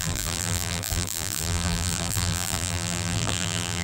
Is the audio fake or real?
fake